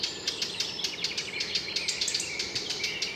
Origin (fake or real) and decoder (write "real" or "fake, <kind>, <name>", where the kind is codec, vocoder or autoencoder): real